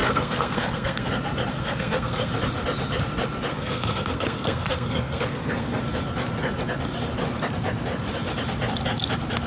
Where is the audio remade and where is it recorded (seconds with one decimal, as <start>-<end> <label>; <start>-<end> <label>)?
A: 0.0-1.1 remade; 1.1-1.5 recorded; 1.5-2.3 remade; 2.3-3.5 recorded; 3.5-5.8 remade; 5.8-9.5 recorded